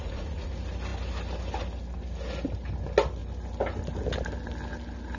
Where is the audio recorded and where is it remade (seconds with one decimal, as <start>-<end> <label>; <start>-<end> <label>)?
0.0-0.5 remade; 0.5-5.2 recorded